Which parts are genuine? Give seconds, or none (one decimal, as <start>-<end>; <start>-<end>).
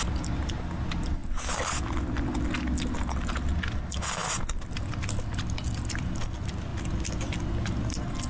0.0-8.3